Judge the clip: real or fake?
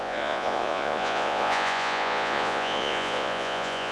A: fake